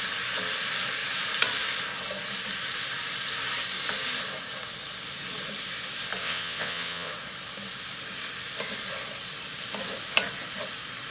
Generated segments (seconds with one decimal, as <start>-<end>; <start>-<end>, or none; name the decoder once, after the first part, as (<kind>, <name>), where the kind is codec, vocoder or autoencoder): 6.2-7.1 (vocoder, WaveNeXt)